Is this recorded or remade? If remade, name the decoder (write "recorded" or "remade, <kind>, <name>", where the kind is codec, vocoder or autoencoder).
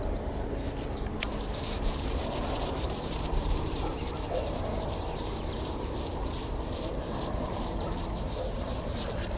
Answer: remade, vocoder, BigVGAN v2